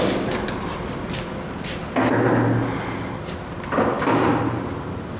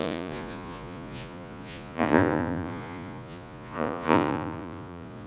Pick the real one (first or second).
first